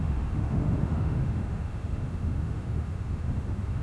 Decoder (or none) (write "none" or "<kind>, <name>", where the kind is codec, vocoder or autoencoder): autoencoder, DAC-VAE